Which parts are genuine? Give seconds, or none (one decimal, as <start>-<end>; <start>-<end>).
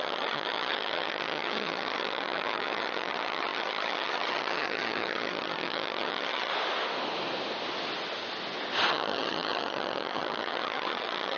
6.5-8.9